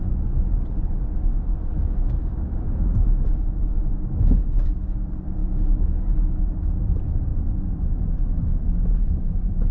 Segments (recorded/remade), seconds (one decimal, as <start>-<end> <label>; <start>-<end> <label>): 0.0-1.7 recorded; 1.7-4.4 remade; 4.4-5.4 recorded; 5.4-6.4 remade; 6.4-9.7 recorded

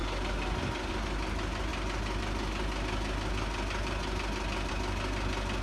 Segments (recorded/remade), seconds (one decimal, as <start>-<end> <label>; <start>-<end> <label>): 0.0-5.6 recorded

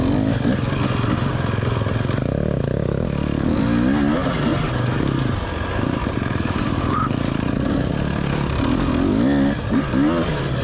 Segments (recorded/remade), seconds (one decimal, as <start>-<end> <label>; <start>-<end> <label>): 0.0-4.5 recorded; 4.5-7.9 remade; 7.9-10.6 recorded

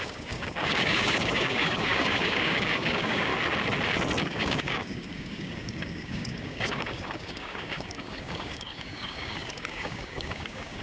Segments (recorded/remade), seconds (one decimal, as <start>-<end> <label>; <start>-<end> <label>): 0.0-3.3 remade; 3.3-4.2 recorded; 4.2-10.8 remade

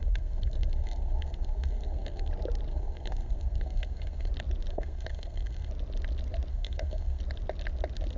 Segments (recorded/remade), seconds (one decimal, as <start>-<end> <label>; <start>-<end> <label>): 0.0-2.3 remade; 2.3-2.7 recorded; 2.7-4.3 remade; 4.3-4.7 recorded; 4.7-5.7 remade; 5.7-6.5 recorded; 6.5-7.2 remade; 7.2-8.2 recorded